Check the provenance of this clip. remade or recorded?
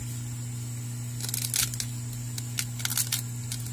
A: recorded